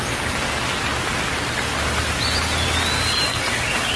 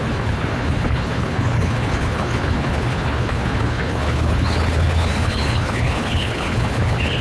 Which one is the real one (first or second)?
first